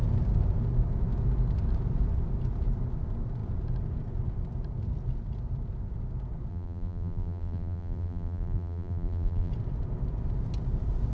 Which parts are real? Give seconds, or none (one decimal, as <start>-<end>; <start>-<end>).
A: 0.0-6.5; 9.5-11.1